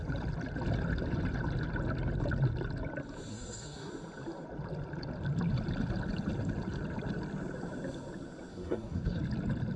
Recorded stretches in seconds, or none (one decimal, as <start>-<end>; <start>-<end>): 0.0-3.3; 3.9-8.5; 9.2-9.8